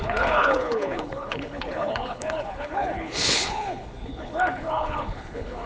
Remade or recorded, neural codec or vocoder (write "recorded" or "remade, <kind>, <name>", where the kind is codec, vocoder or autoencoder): remade, codec, HILCodec